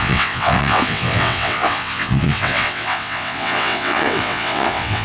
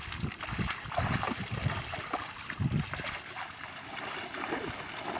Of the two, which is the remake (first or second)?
first